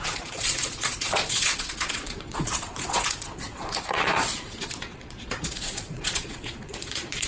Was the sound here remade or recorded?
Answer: remade